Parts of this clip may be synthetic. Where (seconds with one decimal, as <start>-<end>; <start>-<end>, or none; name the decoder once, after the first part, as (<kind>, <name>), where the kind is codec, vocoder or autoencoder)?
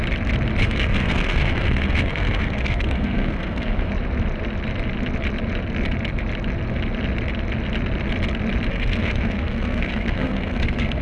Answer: 0.6-3.9 (codec, SNAC); 8.7-11.0